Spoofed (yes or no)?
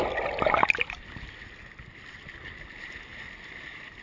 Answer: no